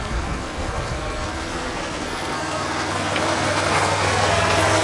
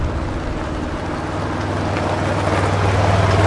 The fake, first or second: first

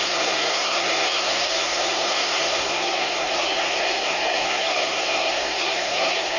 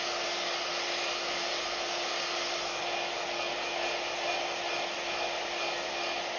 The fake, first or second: first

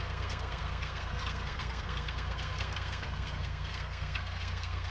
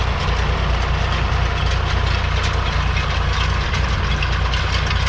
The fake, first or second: first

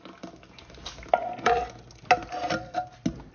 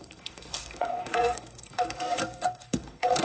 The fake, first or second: second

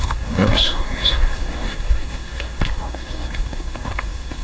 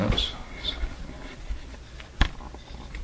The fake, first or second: first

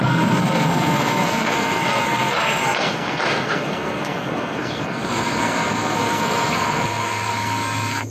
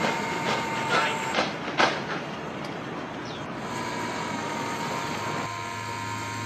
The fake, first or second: first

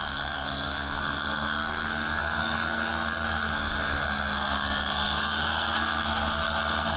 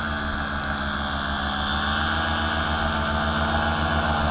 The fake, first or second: first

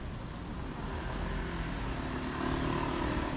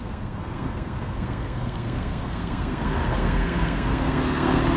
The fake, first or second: second